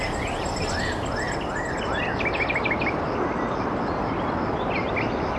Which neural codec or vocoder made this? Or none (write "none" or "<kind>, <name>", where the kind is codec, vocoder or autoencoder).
none